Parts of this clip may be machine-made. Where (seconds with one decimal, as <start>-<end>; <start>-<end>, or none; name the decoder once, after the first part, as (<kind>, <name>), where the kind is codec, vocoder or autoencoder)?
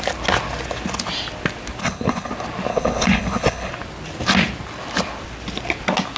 1.8-2.3 (codec, HILCodec); 2.7-3.7